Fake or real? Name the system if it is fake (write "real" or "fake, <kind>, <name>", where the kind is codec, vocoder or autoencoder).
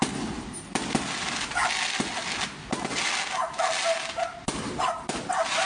real